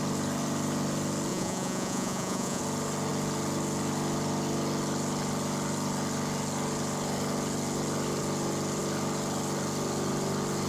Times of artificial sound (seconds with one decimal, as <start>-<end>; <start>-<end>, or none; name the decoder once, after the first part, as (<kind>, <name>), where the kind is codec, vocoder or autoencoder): 1.3-2.6 (vocoder, Vocos)